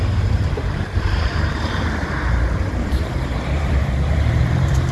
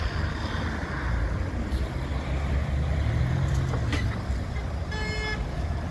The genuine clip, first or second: second